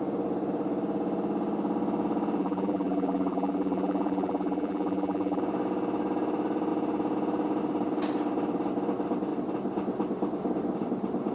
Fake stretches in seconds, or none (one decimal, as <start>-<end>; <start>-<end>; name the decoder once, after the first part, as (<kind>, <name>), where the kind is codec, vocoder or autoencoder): 2.4-5.4 (vocoder, BigVGAN v2)